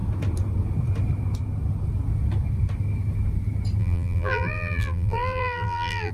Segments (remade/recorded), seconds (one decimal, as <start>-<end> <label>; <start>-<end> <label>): 0.0-3.8 recorded; 3.8-6.1 remade